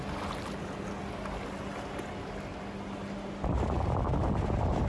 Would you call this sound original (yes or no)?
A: yes